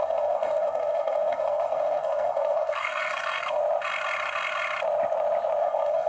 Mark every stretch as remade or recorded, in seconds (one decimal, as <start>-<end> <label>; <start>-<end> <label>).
0.0-3.6 remade; 3.6-5.6 recorded; 5.6-6.1 remade